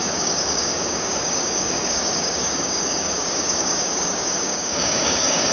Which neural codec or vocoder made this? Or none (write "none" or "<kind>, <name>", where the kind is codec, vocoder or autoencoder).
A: codec, DAC